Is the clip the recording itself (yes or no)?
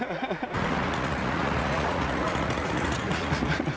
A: no